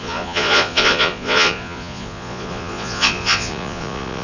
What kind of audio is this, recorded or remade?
remade